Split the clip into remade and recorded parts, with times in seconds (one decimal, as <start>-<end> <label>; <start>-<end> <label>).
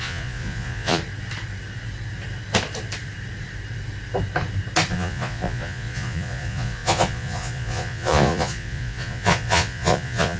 0.0-1.0 remade; 1.0-4.9 recorded; 4.9-10.4 remade